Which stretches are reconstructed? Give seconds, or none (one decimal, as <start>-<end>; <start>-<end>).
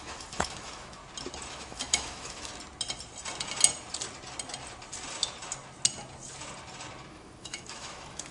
0.0-1.0; 1.5-2.5; 7.1-8.3